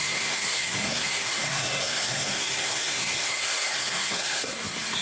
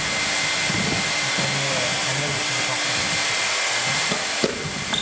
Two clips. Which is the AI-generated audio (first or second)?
first